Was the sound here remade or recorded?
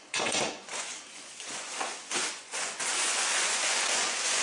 remade